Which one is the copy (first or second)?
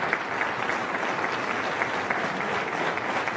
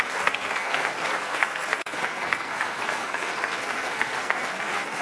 second